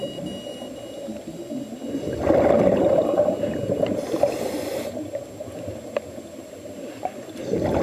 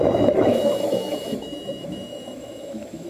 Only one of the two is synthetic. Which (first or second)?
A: second